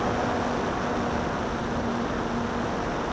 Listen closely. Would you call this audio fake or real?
real